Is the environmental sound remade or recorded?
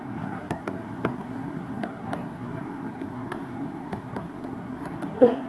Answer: remade